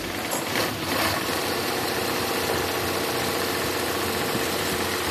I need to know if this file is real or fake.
real